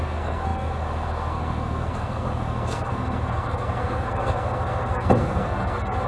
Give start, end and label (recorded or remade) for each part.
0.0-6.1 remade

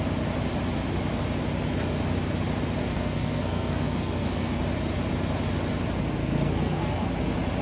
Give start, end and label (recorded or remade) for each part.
0.0-2.9 recorded; 2.9-4.6 remade; 4.6-6.2 recorded; 6.2-7.1 remade; 7.1-7.6 recorded

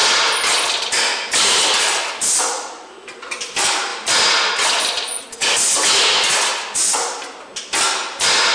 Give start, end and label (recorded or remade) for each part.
0.0-8.5 recorded

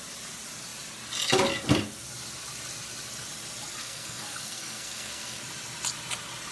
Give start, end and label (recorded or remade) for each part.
0.0-3.8 recorded; 3.8-5.4 remade; 5.4-6.5 recorded

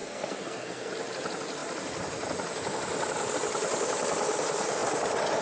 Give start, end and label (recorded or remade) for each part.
0.0-0.9 remade; 0.9-5.4 recorded

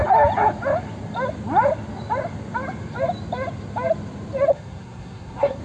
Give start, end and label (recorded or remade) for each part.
0.0-4.5 recorded; 4.5-5.6 remade